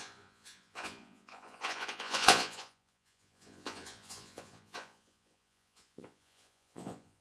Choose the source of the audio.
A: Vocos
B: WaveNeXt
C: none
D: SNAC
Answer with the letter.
A